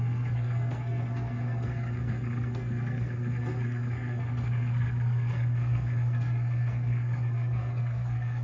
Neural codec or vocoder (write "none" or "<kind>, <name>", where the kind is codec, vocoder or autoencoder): codec, SNAC